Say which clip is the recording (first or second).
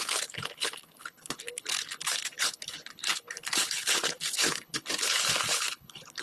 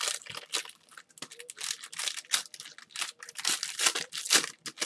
second